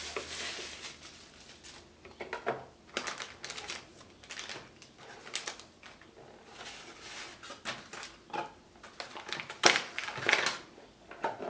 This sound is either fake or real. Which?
real